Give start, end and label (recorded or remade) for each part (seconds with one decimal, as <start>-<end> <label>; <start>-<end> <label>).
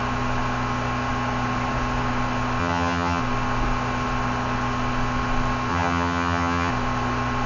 0.0-2.6 recorded; 2.6-3.2 remade; 3.2-5.7 recorded; 5.7-6.7 remade; 6.7-7.5 recorded